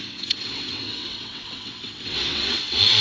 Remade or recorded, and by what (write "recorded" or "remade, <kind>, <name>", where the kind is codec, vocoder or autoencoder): remade, vocoder, WaveNeXt